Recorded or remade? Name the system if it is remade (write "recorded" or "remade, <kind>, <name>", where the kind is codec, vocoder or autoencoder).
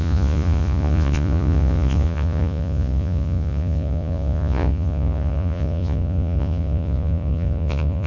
remade, vocoder, Vocos